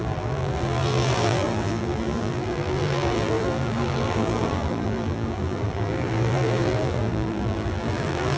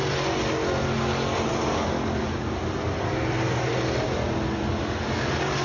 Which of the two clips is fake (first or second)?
first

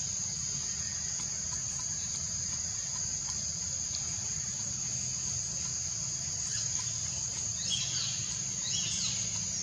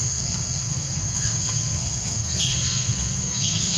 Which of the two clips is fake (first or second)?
second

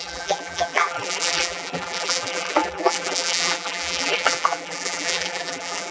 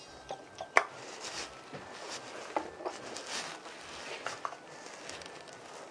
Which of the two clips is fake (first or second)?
first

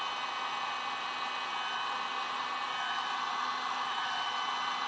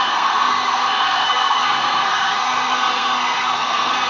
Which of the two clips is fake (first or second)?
second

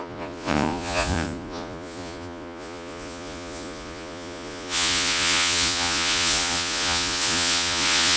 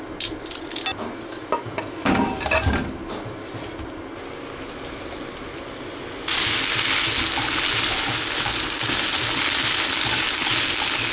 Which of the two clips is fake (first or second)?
first